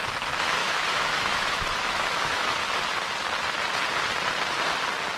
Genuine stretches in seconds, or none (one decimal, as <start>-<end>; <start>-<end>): 0.0-0.6; 2.4-5.2